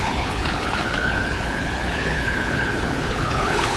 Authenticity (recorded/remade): remade